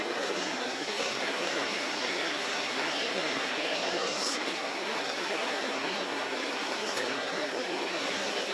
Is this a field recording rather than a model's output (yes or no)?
no